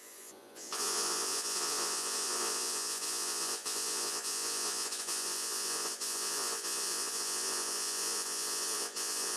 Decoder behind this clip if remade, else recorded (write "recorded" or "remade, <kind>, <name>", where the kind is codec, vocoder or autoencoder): remade, vocoder, Vocos